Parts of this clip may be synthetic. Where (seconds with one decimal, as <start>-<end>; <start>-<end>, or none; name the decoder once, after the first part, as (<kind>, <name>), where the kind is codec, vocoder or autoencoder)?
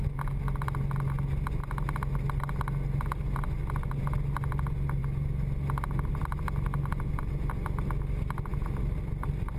none